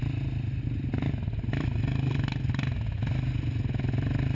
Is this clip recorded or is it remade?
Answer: recorded